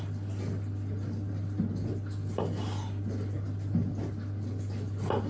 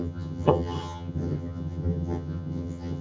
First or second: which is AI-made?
second